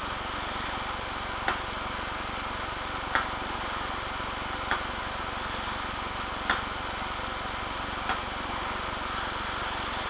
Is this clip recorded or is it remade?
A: recorded